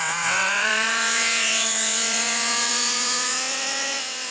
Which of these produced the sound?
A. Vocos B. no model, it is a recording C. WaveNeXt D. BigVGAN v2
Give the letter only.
C